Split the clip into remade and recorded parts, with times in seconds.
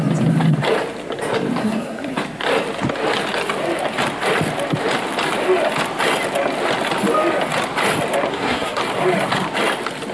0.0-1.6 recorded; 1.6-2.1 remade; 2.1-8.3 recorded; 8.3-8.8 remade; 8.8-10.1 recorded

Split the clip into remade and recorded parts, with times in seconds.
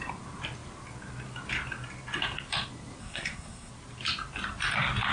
0.0-3.0 recorded; 3.0-3.7 remade; 3.7-5.1 recorded